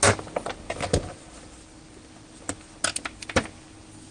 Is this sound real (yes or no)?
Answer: yes